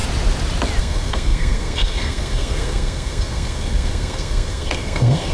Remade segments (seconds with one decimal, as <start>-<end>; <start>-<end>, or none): 0.8-5.3